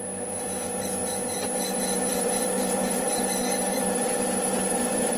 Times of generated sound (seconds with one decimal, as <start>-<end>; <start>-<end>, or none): 2.1-5.2